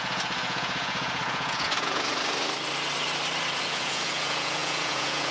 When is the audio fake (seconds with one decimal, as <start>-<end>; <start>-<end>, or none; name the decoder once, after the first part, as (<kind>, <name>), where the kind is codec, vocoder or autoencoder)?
0.0-2.1 (vocoder, Vocos); 3.6-5.3